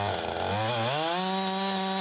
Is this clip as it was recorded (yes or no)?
yes